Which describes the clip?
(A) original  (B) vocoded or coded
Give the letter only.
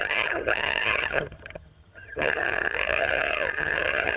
B